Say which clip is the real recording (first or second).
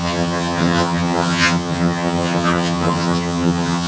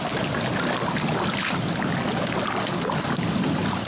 second